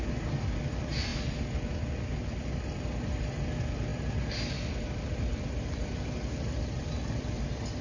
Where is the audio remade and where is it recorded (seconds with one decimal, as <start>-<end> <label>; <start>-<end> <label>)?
0.0-7.8 recorded